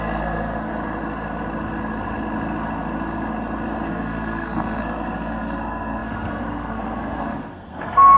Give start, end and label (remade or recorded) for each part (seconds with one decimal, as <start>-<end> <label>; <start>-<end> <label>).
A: 0.0-0.7 remade; 0.7-3.9 recorded; 3.9-8.2 remade